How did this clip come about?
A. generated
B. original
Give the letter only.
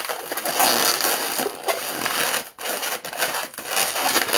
B